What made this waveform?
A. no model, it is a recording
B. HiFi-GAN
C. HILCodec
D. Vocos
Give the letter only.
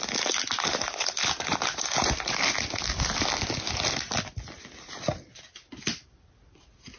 A